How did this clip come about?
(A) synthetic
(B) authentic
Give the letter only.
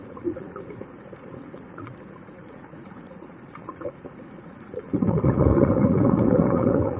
A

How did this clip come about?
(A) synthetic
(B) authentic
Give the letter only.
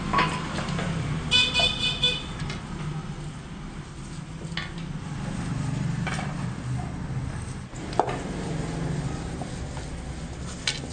B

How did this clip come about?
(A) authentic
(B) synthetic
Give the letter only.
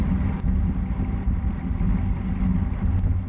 A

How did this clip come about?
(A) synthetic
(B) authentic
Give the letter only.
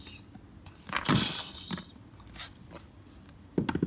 B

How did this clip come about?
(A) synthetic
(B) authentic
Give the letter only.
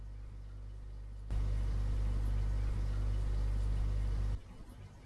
B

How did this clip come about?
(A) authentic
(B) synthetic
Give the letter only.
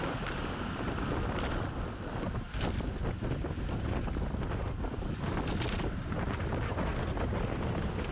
A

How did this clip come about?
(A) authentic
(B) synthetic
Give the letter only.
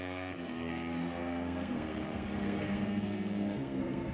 B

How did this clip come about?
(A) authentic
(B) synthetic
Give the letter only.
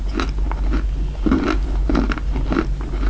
A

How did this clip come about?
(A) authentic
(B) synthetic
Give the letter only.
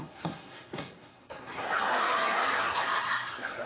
B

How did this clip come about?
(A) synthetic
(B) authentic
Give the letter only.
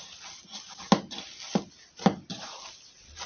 B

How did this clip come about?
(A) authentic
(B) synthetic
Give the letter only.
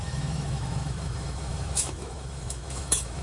B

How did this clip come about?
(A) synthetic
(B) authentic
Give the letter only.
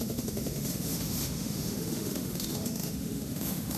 A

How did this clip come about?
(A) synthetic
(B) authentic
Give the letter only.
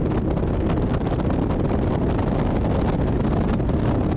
B